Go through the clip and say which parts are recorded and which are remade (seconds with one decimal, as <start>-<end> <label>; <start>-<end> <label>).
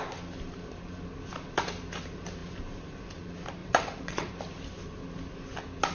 0.0-3.6 recorded; 3.6-4.3 remade; 4.3-5.9 recorded